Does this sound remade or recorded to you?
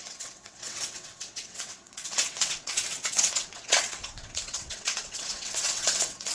remade